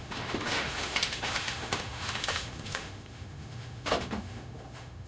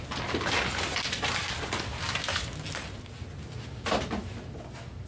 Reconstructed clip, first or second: first